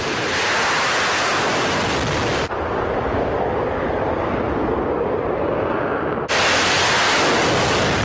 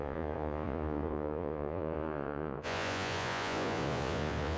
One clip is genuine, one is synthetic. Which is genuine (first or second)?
first